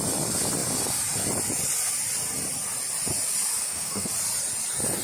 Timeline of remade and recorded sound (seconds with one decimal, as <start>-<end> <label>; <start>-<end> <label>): 0.0-3.6 recorded; 3.6-4.1 remade; 4.1-5.0 recorded